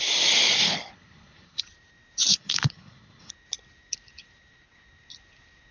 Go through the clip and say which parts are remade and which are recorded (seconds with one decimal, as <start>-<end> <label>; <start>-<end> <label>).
0.0-0.6 recorded; 0.6-1.6 remade; 1.6-2.3 recorded; 2.3-3.3 remade; 3.3-5.7 recorded